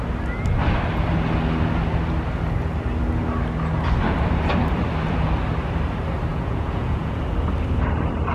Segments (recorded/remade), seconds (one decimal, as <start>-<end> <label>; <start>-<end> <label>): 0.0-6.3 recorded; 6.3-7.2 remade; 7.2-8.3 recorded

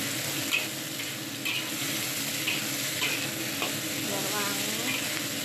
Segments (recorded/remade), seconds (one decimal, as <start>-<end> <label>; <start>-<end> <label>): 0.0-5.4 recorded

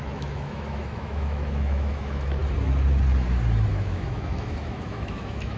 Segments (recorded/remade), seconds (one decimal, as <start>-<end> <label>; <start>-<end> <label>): 0.0-2.4 remade; 2.4-3.7 recorded; 3.7-5.6 remade

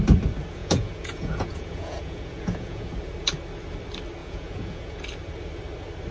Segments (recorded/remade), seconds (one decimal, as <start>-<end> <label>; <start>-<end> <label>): 0.0-0.6 recorded; 0.6-2.9 remade; 2.9-4.2 recorded; 4.2-5.0 remade; 5.0-6.1 recorded

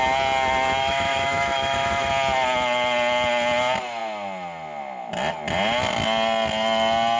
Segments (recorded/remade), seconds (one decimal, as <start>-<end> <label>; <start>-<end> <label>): 0.0-0.8 recorded; 0.8-2.1 remade; 2.1-7.2 recorded